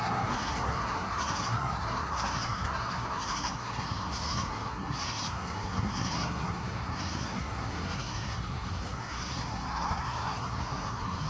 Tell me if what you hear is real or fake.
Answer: fake